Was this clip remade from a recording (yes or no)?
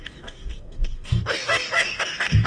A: yes